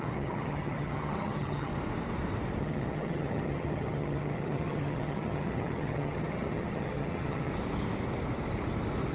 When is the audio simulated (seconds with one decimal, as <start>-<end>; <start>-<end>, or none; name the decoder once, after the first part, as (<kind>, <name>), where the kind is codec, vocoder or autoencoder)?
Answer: 0.0-1.7 (vocoder, HiFi-GAN); 2.6-7.5